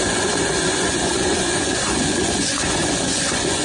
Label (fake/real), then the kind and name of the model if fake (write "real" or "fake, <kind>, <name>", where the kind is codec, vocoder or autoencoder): fake, vocoder, Vocos